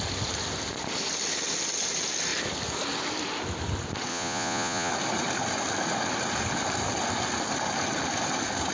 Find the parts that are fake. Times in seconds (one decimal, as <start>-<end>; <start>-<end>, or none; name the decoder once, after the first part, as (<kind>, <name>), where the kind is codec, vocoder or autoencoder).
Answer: 4.1-4.9 (vocoder, Vocos)